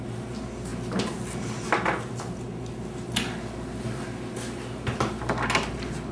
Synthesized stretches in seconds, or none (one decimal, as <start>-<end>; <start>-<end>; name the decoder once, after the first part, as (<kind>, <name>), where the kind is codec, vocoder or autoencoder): none

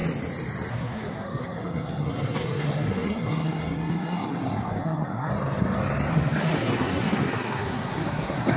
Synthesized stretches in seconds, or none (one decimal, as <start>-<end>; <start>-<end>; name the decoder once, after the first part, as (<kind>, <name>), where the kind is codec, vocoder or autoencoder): 0.7-5.3 (codec, SNAC); 6.1-8.6

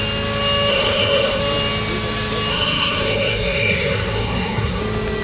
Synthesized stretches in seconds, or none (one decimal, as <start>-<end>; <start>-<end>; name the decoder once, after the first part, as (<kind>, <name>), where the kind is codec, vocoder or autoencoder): 0.7-1.4 (codec, SNAC); 2.5-4.8

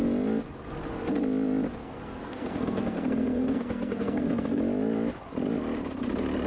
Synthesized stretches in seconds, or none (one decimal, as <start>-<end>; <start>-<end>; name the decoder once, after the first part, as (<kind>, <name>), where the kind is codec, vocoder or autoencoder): 1.8-4.6 (codec, SNAC)

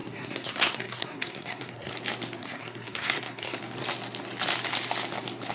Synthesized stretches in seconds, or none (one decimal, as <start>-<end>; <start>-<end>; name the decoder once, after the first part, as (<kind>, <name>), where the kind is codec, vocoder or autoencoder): 0.0-1.9 (codec, SNAC); 2.4-3.6

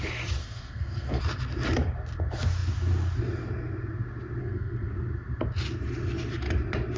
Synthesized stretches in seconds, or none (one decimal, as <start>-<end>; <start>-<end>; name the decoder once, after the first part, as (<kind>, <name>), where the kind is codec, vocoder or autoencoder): 0.4-1.2 (codec, SNAC); 4.4-4.9

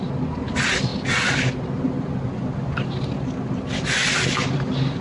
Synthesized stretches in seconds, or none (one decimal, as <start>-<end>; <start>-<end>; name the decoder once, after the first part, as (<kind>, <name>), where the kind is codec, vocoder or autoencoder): none

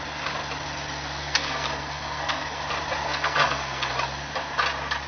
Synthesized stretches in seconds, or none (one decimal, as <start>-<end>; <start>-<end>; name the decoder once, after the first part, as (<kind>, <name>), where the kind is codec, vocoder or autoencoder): 1.2-2.6 (codec, SNAC); 3.0-3.9